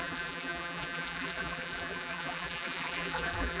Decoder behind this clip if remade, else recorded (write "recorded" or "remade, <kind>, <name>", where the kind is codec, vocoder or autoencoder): remade, vocoder, BigVGAN v2